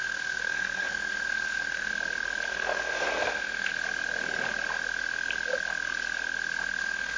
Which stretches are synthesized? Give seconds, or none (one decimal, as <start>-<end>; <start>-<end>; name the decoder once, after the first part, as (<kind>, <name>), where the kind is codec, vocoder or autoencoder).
0.0-1.9 (codec, SNAC); 2.5-3.7; 6.8-7.2